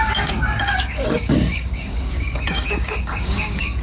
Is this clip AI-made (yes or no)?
yes